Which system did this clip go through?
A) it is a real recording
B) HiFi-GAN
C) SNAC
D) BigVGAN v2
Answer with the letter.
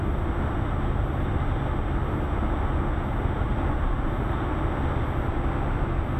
A